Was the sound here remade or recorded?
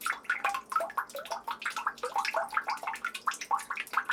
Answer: recorded